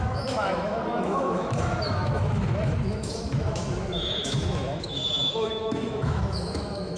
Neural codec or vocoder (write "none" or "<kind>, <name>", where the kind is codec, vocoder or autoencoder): autoencoder, DAC-VAE